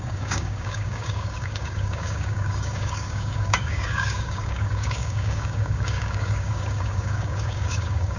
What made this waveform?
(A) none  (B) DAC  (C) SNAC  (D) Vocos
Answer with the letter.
B